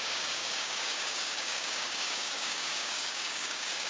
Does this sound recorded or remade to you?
remade